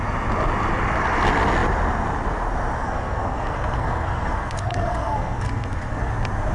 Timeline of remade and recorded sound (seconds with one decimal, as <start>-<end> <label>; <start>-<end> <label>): 0.0-2.8 recorded; 2.8-6.1 remade; 6.1-6.5 recorded